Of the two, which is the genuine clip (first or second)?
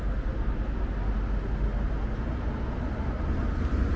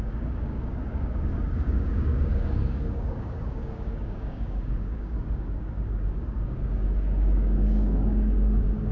first